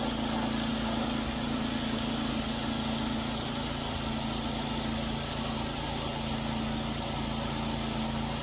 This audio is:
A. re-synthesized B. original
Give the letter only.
B